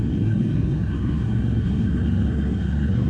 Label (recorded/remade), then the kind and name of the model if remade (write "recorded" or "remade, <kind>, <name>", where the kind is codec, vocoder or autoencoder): remade, codec, SNAC